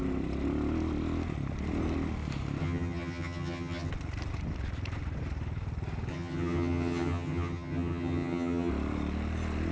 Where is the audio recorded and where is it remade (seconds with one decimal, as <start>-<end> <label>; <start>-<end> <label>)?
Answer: 0.0-2.6 recorded; 2.6-3.9 remade; 3.9-6.1 recorded; 6.1-8.7 remade; 8.7-9.7 recorded